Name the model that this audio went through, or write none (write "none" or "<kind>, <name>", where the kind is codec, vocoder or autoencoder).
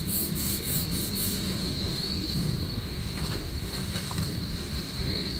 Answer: codec, DAC